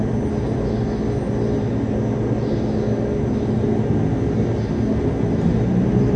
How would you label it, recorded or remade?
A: recorded